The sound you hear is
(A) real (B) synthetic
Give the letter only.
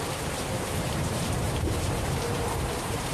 B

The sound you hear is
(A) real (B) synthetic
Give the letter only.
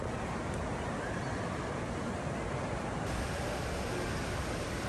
A